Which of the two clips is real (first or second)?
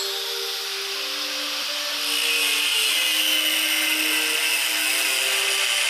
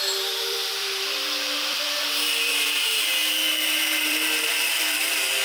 first